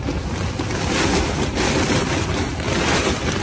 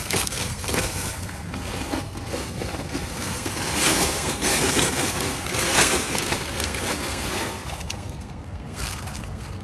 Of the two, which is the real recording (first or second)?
first